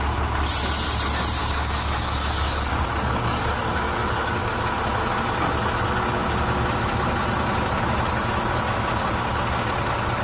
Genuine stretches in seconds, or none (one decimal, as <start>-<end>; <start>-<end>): 0.0-1.4; 4.5-10.2